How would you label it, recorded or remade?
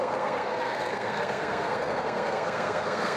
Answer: remade